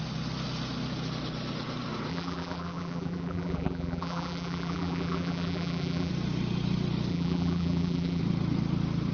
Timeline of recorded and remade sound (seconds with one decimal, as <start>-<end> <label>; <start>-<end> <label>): 0.0-2.1 recorded; 2.1-6.1 remade; 6.1-7.1 recorded; 7.1-8.2 remade; 8.2-9.1 recorded